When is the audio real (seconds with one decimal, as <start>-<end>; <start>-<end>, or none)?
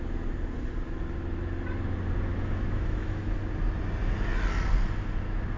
0.0-2.3; 3.4-5.6